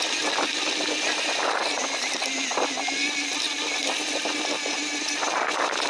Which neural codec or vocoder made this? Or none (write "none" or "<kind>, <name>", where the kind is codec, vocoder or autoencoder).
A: none